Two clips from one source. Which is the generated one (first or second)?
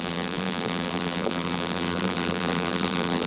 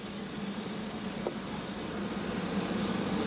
first